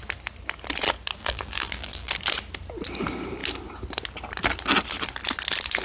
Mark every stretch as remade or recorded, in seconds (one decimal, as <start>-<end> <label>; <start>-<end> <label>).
0.0-1.2 recorded; 1.2-2.1 remade; 2.1-5.8 recorded